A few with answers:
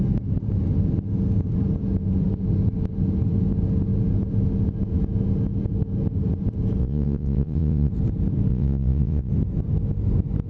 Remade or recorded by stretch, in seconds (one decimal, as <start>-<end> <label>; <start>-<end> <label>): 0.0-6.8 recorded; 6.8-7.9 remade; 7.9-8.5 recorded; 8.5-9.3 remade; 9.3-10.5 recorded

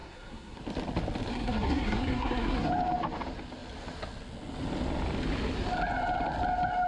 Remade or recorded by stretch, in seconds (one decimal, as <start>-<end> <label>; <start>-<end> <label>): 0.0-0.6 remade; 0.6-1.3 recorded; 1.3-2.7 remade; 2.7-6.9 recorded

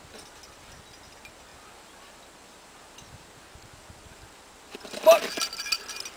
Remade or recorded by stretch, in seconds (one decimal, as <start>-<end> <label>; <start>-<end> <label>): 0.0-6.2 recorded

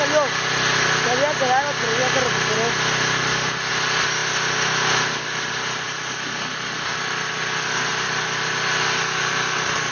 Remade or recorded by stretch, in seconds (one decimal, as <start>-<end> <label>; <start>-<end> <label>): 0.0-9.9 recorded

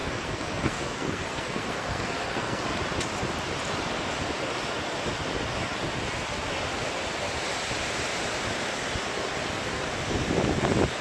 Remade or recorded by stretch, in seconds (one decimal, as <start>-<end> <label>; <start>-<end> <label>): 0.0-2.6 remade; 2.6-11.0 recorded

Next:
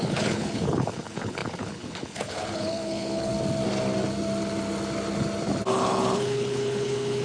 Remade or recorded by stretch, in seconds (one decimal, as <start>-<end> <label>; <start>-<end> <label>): 0.0-3.3 remade; 3.3-5.7 recorded; 5.7-7.2 remade

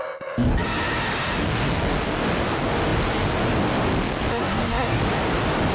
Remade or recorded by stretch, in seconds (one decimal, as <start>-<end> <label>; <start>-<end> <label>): 0.0-4.3 recorded; 4.3-5.0 remade; 5.0-5.7 recorded